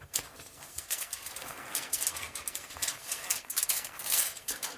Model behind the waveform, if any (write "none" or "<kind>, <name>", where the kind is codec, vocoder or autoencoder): codec, SNAC